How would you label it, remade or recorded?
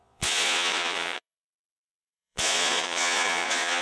remade